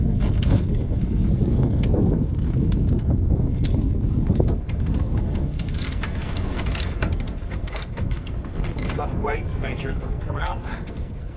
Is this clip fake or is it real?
fake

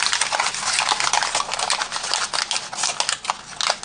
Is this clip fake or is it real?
real